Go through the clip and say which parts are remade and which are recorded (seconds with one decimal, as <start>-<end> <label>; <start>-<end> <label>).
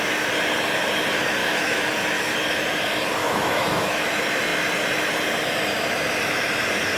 0.0-1.4 recorded; 1.4-1.9 remade; 1.9-3.2 recorded; 3.2-4.1 remade; 4.1-7.0 recorded